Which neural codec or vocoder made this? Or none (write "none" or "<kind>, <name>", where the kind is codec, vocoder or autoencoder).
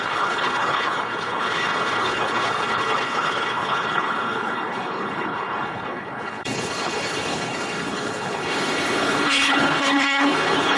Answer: codec, HILCodec